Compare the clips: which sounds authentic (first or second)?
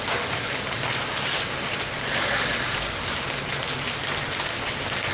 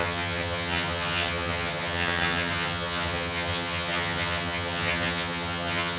first